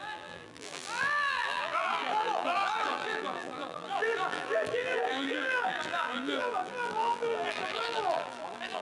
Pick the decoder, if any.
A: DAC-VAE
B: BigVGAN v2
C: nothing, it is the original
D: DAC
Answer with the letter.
B